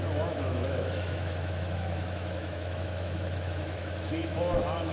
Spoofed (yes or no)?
yes